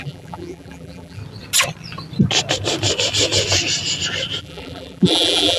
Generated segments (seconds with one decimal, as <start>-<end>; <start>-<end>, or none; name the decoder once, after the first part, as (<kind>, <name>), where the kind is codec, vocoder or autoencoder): 0.0-1.2 (vocoder, BigVGAN v2); 4.4-5.6